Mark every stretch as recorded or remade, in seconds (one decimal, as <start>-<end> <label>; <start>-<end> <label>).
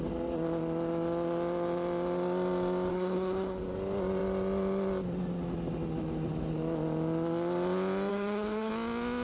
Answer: 0.0-2.9 recorded; 2.9-3.6 remade; 3.6-8.1 recorded; 8.1-8.7 remade; 8.7-9.2 recorded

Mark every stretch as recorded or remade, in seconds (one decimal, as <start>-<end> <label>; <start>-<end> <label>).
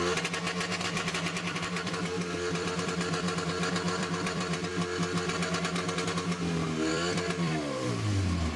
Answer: 0.0-0.4 recorded; 0.4-4.7 remade; 4.7-6.9 recorded; 6.9-7.9 remade; 7.9-8.6 recorded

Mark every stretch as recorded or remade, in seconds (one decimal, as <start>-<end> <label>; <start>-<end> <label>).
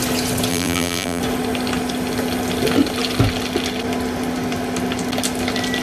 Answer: 0.0-0.5 recorded; 0.5-1.2 remade; 1.2-5.8 recorded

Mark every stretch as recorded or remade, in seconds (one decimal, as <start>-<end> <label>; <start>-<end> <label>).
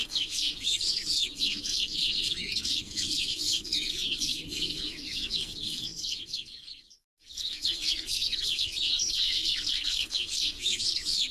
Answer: 0.0-11.3 remade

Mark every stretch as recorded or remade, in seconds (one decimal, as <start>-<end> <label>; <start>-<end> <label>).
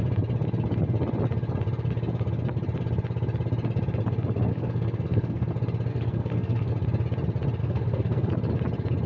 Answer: 0.0-4.5 recorded; 4.5-5.5 remade; 5.5-5.9 recorded; 5.9-6.7 remade; 6.7-7.6 recorded; 7.6-8.3 remade; 8.3-9.1 recorded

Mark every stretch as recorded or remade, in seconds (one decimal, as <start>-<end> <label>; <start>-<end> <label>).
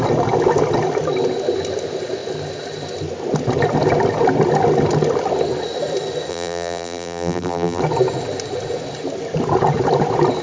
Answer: 0.0-6.3 recorded; 6.3-7.8 remade; 7.8-10.4 recorded